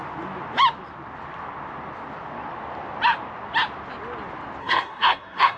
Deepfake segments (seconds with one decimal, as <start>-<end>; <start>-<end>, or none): 4.6-5.6